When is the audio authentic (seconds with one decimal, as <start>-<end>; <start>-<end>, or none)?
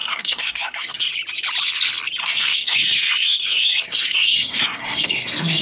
1.1-2.2